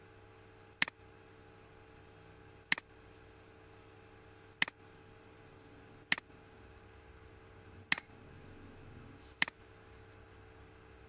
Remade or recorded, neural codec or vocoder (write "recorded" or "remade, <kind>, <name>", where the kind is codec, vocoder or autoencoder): recorded